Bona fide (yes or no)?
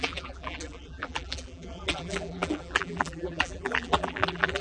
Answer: no